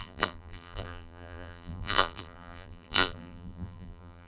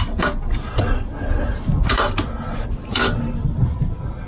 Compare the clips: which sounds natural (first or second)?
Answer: second